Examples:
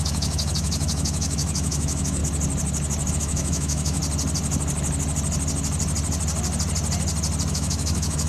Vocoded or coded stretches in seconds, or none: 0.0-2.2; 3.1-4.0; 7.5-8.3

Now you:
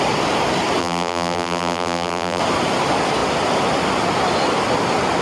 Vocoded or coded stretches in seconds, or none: 0.8-2.4

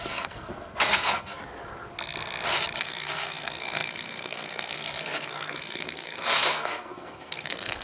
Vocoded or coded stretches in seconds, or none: 0.0-1.4; 2.8-7.8

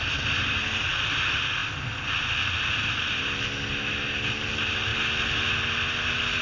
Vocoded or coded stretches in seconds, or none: none

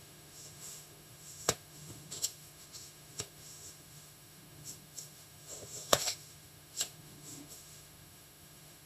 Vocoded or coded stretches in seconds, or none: 0.0-8.9

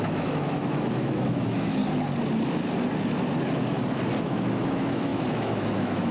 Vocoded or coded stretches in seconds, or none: 0.0-1.8; 4.2-6.1

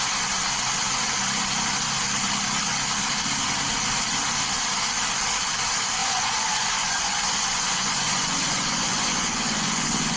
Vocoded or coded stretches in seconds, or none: 6.0-10.2